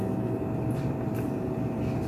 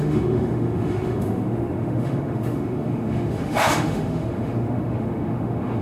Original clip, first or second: first